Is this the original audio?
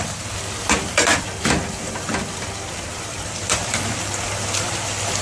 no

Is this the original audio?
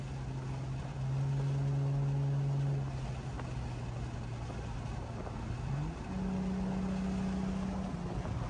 yes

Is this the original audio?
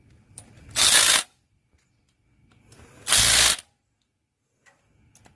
yes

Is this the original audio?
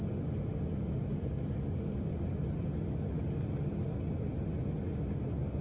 yes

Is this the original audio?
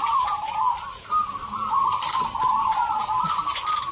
yes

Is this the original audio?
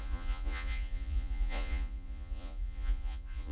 no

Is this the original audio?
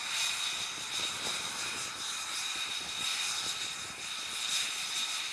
yes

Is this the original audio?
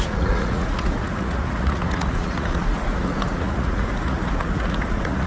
no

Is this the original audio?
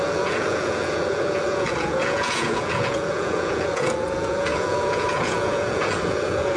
no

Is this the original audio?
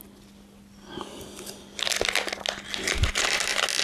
yes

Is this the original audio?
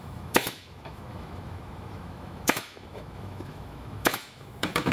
no